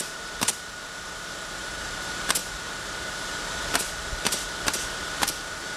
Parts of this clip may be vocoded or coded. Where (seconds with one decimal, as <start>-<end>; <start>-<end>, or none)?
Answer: 0.0-5.8